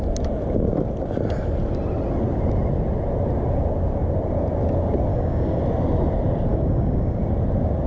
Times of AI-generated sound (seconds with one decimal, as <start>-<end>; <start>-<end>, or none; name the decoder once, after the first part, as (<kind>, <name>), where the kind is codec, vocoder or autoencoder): 5.1-5.6 (codec, DAC); 6.5-7.2